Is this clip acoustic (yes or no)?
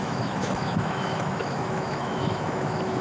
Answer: no